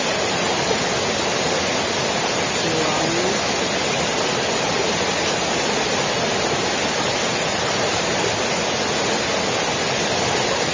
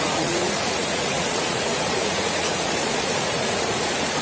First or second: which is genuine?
first